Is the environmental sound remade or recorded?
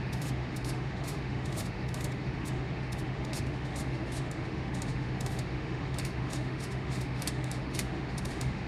remade